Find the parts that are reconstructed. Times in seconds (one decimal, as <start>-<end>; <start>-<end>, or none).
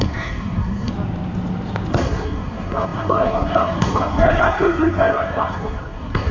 0.0-0.9; 1.9-6.3